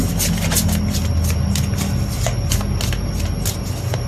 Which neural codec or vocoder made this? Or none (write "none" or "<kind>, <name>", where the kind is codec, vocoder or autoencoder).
none